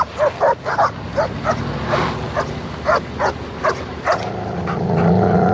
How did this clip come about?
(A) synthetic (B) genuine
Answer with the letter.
B